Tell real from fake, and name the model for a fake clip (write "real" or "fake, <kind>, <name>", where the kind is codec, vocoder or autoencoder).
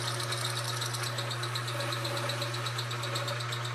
real